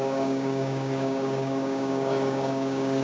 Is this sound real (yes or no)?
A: no